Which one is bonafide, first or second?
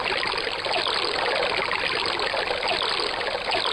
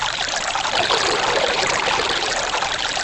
first